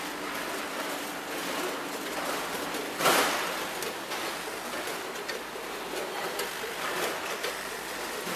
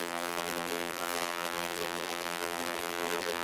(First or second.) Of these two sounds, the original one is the first